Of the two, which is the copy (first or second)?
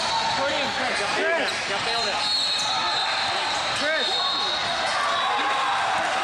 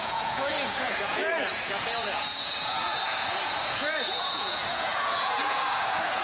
second